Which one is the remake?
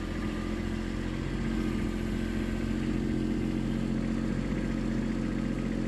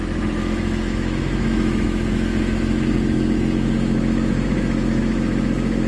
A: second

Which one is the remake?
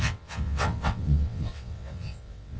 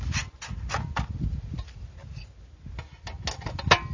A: first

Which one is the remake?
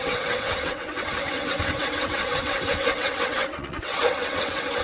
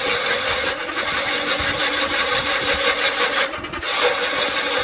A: first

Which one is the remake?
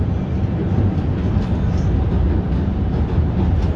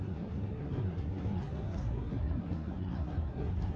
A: second